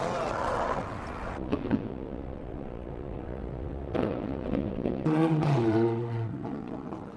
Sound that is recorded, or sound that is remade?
remade